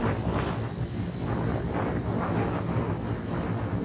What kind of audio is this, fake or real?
real